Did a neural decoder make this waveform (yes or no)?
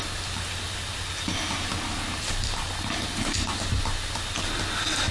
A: no